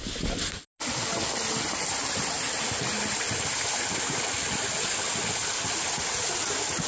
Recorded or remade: recorded